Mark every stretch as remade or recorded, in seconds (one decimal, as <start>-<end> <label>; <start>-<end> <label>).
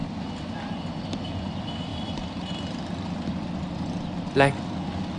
0.0-5.2 recorded